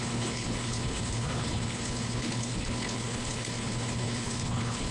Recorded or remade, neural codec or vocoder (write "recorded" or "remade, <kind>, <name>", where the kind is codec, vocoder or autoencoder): remade, codec, HILCodec